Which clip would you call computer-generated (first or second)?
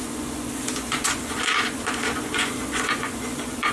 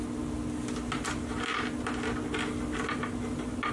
first